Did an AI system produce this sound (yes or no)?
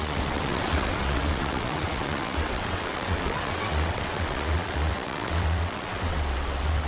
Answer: yes